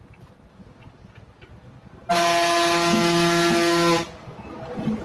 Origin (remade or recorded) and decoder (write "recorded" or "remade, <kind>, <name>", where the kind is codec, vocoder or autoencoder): recorded